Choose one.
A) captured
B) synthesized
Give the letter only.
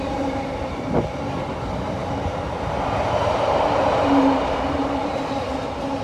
B